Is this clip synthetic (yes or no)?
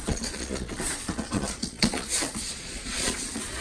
yes